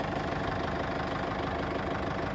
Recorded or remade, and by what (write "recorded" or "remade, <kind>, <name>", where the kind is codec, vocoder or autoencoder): recorded